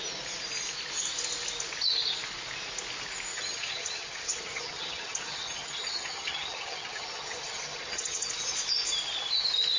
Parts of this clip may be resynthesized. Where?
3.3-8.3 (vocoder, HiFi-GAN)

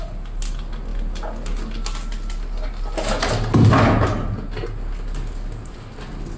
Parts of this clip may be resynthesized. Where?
none

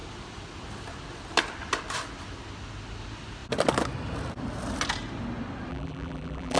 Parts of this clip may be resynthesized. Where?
5.7-6.6 (vocoder, BigVGAN v2)

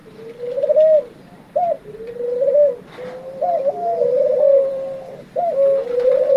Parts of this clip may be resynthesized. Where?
1.2-6.4 (vocoder, BigVGAN v2)

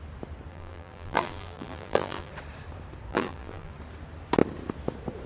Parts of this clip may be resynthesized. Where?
0.5-2.3 (vocoder, BigVGAN v2); 3.1-3.7